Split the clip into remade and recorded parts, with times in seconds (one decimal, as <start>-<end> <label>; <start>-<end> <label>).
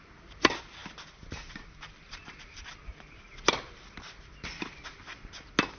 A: 0.0-0.8 recorded; 0.8-4.3 remade; 4.3-5.8 recorded